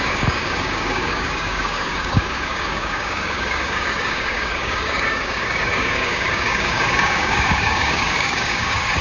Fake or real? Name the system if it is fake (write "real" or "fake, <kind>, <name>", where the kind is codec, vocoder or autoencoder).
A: fake, codec, DAC